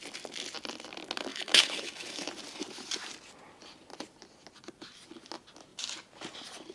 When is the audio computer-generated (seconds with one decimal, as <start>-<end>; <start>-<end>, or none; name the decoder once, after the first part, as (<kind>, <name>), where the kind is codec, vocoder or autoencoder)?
1.3-2.3 (autoencoder, DAC-VAE)